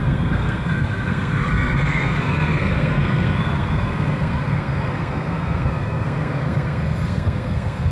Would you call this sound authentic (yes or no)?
no